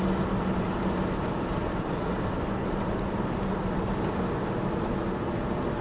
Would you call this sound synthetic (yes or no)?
no